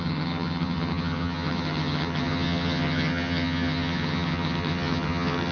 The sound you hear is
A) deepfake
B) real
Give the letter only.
A